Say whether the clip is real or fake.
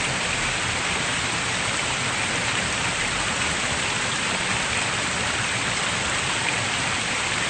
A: real